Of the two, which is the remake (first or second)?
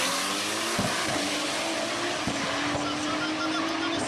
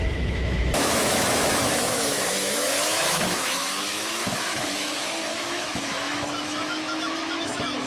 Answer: second